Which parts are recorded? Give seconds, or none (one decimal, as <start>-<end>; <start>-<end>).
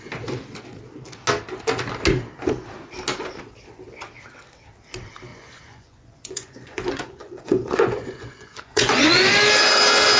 0.0-5.3; 9.3-10.2